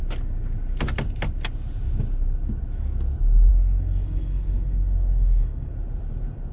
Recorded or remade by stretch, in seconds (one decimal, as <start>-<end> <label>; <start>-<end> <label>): 0.0-3.5 recorded; 3.5-5.7 remade; 5.7-6.5 recorded

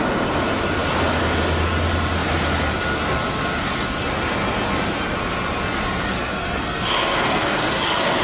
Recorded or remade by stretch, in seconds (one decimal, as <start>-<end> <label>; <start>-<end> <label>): 0.0-6.1 recorded; 6.1-8.2 remade

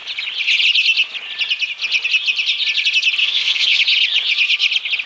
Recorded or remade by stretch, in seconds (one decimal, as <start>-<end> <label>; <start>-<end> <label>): 0.0-3.2 recorded; 3.2-3.8 remade; 3.8-5.1 recorded

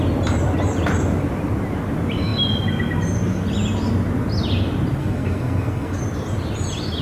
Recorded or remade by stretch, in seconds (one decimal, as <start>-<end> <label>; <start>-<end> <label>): 0.0-5.0 recorded; 5.0-6.0 remade; 6.0-7.0 recorded

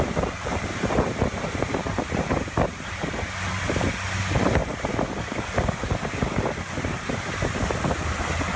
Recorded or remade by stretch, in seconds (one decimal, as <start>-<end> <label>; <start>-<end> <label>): 0.0-8.6 recorded